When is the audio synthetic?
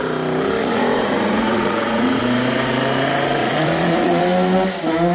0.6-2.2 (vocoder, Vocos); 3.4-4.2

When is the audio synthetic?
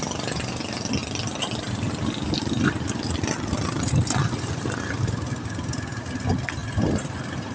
none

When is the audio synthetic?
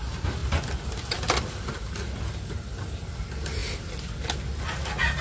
none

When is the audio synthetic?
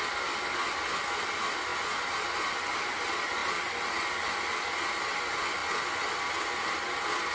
none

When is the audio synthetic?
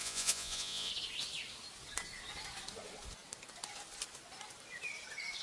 0.0-0.9 (vocoder, Vocos)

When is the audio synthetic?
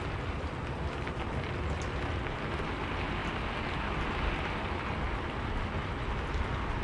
none